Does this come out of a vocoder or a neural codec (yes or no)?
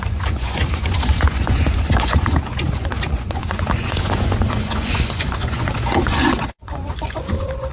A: yes